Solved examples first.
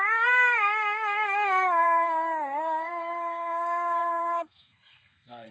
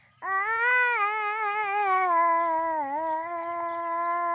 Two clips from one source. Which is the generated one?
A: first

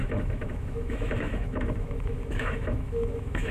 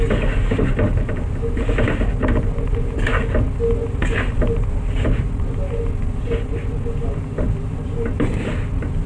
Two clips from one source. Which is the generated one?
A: first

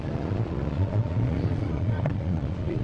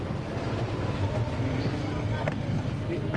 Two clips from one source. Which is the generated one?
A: first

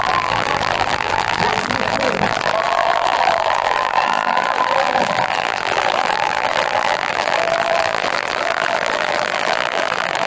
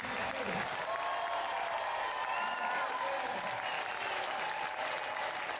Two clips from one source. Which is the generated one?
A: first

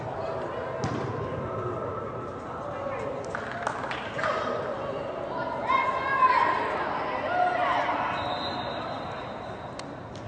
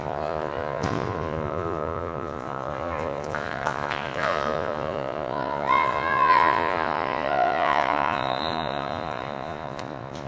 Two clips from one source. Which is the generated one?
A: second